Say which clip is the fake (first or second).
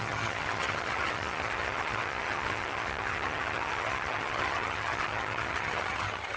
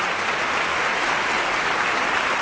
first